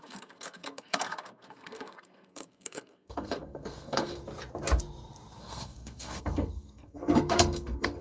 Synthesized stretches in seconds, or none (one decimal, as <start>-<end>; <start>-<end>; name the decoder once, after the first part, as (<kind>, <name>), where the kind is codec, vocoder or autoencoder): 0.0-4.2 (codec, SNAC); 5.4-8.0